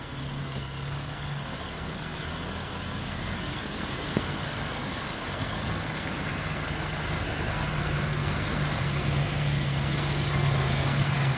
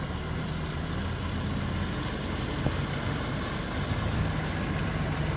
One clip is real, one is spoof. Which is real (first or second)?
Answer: second